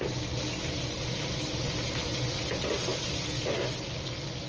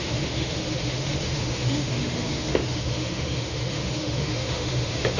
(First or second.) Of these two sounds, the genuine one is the first